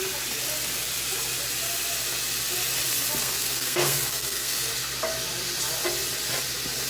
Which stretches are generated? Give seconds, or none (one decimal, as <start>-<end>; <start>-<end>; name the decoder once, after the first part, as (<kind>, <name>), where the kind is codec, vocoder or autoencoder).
3.2-4.7 (codec, SNAC)